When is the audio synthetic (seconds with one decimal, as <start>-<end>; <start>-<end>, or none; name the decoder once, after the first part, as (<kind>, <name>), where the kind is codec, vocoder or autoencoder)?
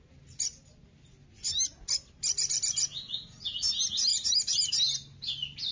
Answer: 4.1-4.7 (vocoder, BigVGAN v2)